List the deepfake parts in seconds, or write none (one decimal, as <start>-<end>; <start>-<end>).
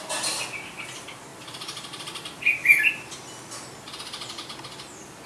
1.3-2.9